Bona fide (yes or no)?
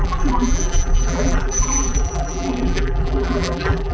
no